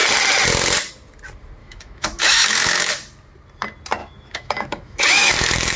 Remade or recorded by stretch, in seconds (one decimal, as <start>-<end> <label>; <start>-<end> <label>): 0.0-1.6 recorded; 1.6-2.9 remade; 2.9-4.0 recorded; 4.0-5.8 remade